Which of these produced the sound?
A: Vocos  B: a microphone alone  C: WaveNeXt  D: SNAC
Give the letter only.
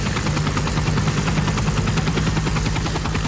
B